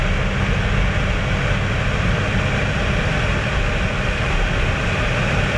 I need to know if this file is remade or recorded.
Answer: recorded